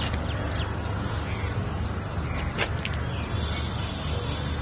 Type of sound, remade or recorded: recorded